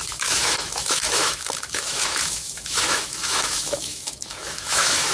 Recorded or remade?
remade